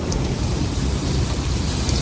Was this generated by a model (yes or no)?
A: yes